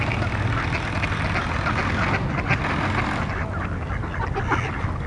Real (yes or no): yes